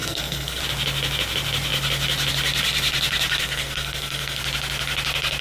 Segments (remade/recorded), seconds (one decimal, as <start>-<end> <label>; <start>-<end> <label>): 0.0-0.6 remade; 0.6-3.4 recorded; 3.4-4.4 remade; 4.4-5.4 recorded